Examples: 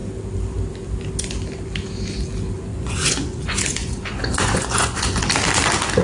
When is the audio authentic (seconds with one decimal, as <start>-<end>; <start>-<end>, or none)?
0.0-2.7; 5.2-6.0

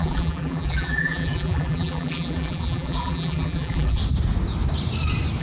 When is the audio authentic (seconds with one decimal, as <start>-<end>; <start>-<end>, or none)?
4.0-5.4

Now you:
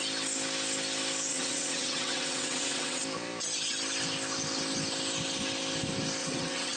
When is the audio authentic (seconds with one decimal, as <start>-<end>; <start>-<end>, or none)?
0.0-1.3; 3.0-6.2